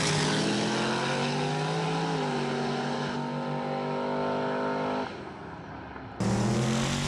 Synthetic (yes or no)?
no